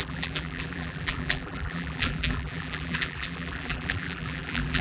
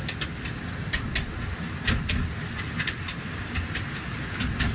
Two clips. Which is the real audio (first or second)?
second